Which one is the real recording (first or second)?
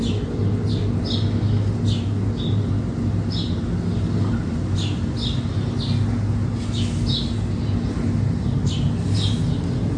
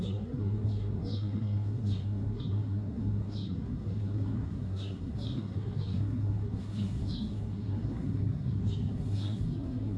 first